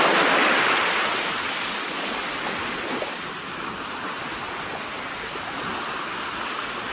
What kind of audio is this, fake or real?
real